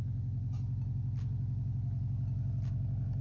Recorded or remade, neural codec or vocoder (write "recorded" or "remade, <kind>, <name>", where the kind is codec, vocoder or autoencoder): recorded